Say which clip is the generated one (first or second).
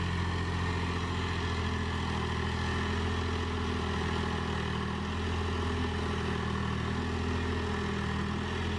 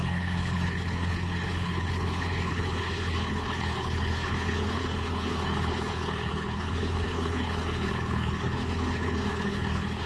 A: second